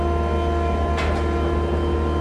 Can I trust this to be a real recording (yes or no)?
yes